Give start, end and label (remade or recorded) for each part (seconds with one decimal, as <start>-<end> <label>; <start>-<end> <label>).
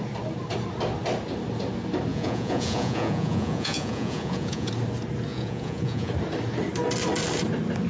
0.0-2.1 recorded; 2.1-4.7 remade; 4.7-5.3 recorded; 5.3-6.1 remade; 6.1-7.9 recorded